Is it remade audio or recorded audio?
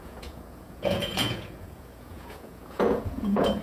remade